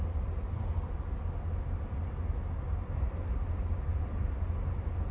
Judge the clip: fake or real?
real